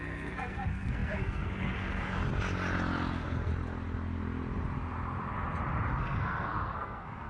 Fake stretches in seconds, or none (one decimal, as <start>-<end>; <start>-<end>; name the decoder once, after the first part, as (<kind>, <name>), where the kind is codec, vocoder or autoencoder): 0.0-2.2 (codec, SNAC); 3.1-3.5; 6.0-7.3